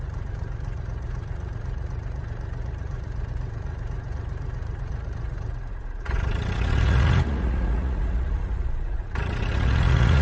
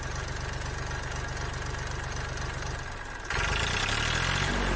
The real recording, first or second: second